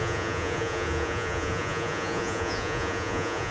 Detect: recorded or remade remade